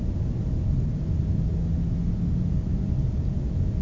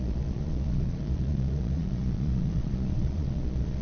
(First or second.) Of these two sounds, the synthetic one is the second